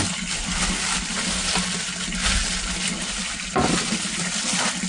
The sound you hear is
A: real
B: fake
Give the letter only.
A